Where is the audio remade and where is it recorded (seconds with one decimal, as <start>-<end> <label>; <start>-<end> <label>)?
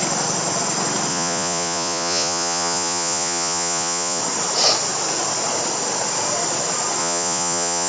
0.0-1.1 recorded; 1.1-4.2 remade; 4.2-7.0 recorded; 7.0-7.9 remade